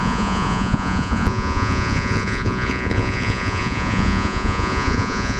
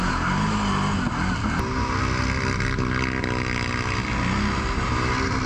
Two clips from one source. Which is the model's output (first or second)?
first